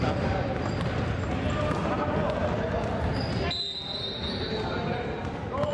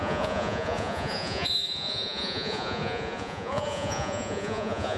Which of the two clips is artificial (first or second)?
second